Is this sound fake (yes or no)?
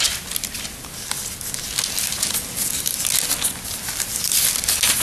no